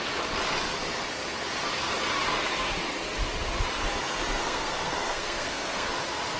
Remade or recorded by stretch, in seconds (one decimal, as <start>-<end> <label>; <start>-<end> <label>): 0.0-4.4 recorded; 4.4-5.9 remade; 5.9-6.4 recorded